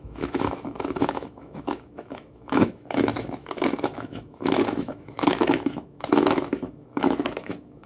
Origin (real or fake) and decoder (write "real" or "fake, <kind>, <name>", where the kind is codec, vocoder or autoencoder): fake, autoencoder, DAC-VAE